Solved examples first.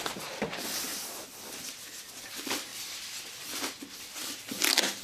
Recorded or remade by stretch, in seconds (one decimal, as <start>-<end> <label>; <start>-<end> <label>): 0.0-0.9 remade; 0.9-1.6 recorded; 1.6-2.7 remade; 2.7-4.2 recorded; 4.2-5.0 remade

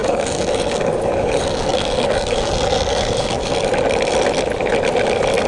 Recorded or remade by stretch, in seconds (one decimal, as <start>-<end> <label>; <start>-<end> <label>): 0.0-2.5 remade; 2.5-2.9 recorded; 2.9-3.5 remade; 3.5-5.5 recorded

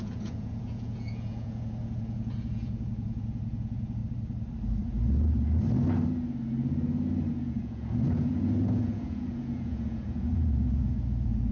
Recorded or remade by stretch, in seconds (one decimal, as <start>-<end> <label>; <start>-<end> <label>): 0.0-4.0 remade; 4.0-7.3 recorded; 7.3-11.5 remade

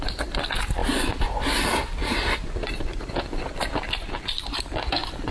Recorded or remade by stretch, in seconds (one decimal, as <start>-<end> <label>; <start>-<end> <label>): 0.0-5.3 recorded

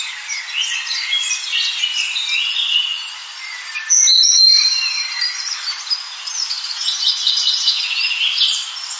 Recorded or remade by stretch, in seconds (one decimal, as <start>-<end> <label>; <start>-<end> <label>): 0.0-9.0 recorded

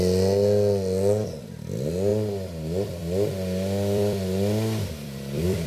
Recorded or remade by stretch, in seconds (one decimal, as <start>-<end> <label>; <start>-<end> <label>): 0.0-2.1 recorded; 2.1-5.7 remade

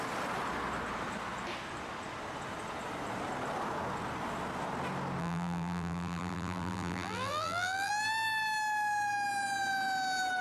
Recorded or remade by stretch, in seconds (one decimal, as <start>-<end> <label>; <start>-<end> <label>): 0.0-5.2 recorded; 5.2-7.9 remade; 7.9-10.4 recorded

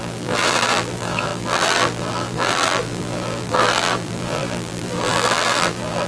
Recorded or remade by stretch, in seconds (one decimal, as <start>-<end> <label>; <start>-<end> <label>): 0.0-6.1 remade